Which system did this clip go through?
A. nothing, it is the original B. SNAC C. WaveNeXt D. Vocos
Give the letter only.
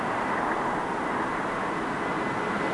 A